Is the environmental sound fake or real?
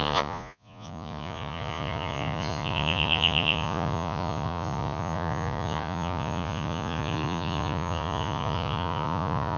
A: fake